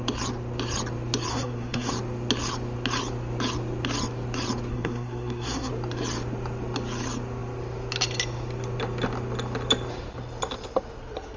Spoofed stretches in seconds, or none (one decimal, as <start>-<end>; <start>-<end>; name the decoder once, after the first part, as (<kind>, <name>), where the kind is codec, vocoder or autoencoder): 1.3-1.9 (codec, SNAC); 4.7-5.7